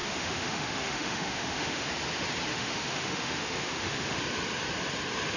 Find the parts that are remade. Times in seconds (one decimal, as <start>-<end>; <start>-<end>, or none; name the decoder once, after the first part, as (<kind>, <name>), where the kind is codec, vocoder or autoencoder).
0.0-1.9 (autoencoder, DAC-VAE); 2.5-4.2